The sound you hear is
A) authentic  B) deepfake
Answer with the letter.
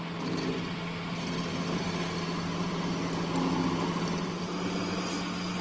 A